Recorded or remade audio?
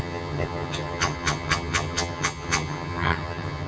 remade